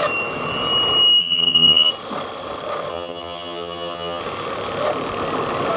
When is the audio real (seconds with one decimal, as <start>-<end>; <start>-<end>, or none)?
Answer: 0.0-1.2; 1.9-2.9; 4.2-5.8